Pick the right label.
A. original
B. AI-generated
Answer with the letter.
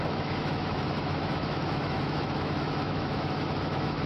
B